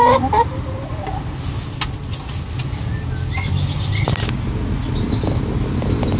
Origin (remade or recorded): recorded